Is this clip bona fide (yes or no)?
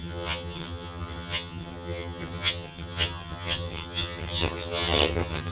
no